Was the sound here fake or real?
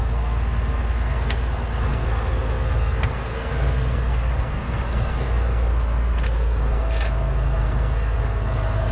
fake